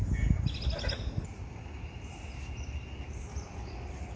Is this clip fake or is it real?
real